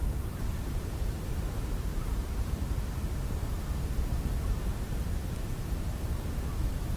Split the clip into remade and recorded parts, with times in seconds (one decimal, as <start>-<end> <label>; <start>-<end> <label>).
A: 0.0-3.4 remade; 3.4-4.4 recorded; 4.4-7.0 remade